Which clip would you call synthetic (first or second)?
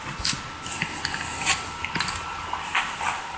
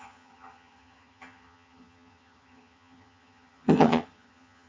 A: second